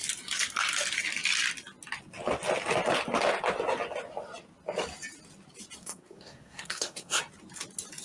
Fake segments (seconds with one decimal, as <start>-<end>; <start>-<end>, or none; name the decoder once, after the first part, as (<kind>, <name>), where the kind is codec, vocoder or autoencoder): 5.8-7.2 (codec, SNAC)